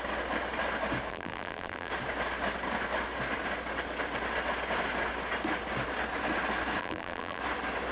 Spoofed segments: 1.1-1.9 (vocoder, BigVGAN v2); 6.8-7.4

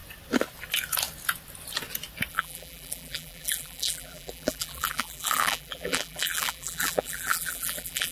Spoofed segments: 2.3-8.1 (vocoder, BigVGAN v2)

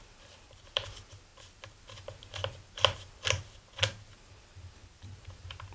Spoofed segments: 0.0-1.3 (vocoder, BigVGAN v2); 4.7-5.7

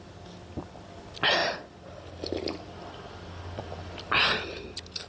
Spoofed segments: none